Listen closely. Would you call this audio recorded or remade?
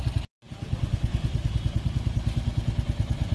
recorded